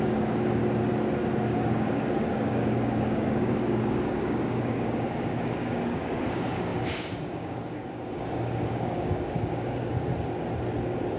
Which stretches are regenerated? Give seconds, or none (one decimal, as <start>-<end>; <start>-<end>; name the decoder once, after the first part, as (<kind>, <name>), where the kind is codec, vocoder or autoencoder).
0.0-0.6 (codec, DAC); 1.4-10.1